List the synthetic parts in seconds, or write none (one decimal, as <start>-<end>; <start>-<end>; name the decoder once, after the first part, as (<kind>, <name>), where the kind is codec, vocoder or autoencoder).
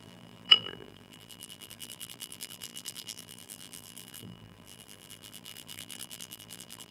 0.0-6.9 (vocoder, BigVGAN v2)